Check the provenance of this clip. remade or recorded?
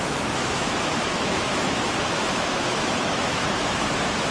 remade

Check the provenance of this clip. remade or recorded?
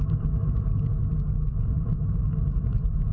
recorded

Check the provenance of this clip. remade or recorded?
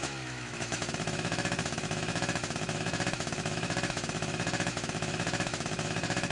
remade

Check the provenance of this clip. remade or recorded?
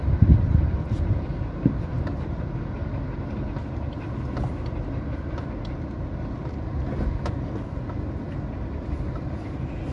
recorded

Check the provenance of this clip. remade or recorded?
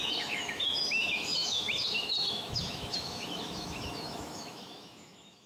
remade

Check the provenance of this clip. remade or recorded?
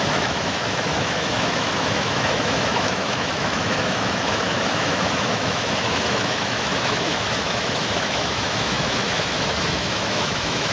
remade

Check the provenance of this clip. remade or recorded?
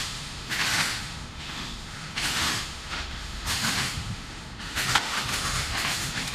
remade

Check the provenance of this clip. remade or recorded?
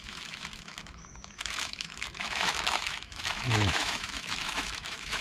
remade